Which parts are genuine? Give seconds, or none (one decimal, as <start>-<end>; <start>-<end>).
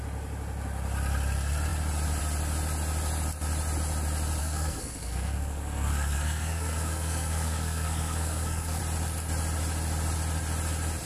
0.0-4.4; 8.8-11.1